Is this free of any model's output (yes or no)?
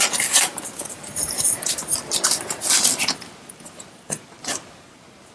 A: no